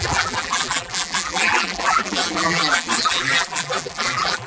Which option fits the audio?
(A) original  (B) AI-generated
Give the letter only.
B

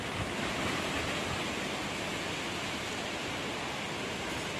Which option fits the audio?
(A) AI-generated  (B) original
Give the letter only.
B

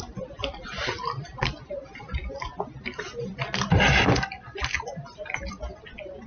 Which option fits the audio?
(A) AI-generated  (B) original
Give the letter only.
A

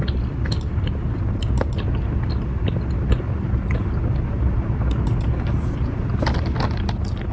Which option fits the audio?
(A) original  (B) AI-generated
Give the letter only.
A